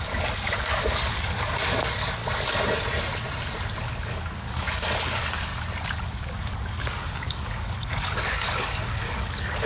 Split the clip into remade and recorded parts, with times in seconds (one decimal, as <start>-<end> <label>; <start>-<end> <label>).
0.0-2.2 remade; 2.2-3.8 recorded; 3.8-5.5 remade; 5.5-6.0 recorded; 6.0-9.7 remade